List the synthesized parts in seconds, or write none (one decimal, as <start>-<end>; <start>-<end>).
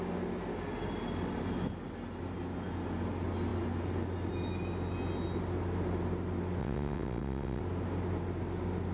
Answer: 6.6-7.6